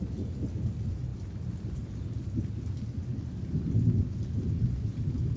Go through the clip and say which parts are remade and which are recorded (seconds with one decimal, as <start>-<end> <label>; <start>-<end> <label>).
0.0-5.4 recorded